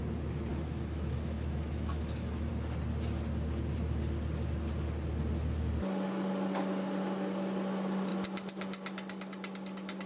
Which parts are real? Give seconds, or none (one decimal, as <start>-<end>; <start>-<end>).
0.0-0.5; 2.5-10.1

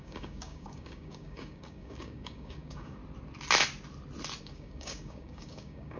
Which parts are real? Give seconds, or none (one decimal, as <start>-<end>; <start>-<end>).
3.0-4.4

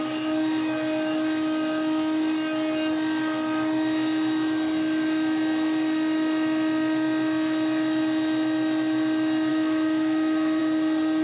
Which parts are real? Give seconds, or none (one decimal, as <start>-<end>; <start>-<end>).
0.0-9.5; 10.6-11.2

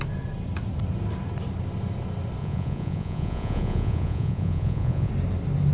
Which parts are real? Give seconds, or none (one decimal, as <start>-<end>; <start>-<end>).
0.0-2.4; 5.1-5.7

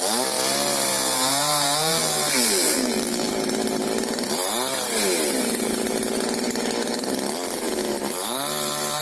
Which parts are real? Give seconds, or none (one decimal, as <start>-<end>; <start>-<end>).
0.0-0.9; 3.3-9.0

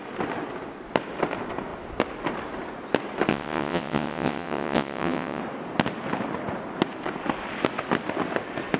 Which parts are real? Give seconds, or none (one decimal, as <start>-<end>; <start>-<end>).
0.0-3.3; 5.4-8.8

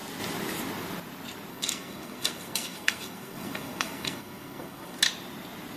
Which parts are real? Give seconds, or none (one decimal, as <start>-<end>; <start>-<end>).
0.0-1.5; 5.0-5.8